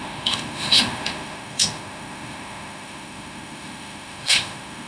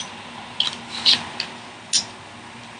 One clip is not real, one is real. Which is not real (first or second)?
first